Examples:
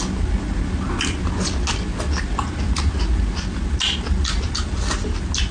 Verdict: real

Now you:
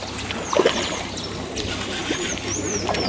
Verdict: real